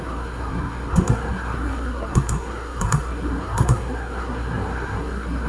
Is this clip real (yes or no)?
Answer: no